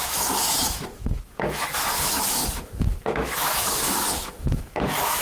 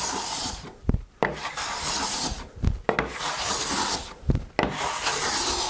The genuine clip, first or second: second